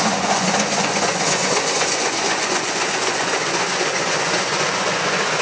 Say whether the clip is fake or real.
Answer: fake